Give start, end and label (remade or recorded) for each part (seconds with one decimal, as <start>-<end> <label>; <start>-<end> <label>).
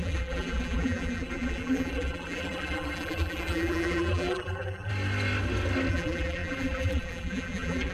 0.0-4.9 remade; 4.9-5.9 recorded; 5.9-7.9 remade